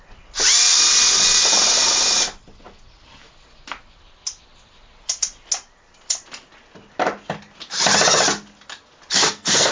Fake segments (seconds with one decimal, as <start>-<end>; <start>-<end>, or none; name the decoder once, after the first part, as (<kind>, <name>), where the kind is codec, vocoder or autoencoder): 9.1-9.7 (codec, SNAC)